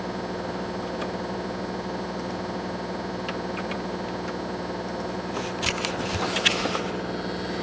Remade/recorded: recorded